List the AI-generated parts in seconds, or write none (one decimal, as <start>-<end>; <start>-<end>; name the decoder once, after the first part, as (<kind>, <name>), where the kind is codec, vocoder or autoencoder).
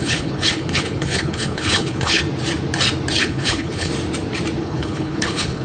0.0-2.2 (codec, HILCodec); 3.2-3.9; 4.6-5.6